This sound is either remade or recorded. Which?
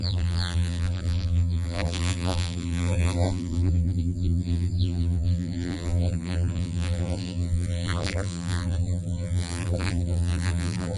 remade